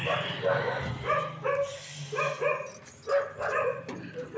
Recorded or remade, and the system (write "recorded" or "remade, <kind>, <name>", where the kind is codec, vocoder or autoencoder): recorded